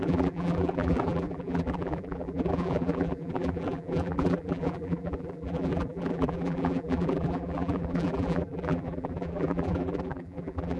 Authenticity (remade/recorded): remade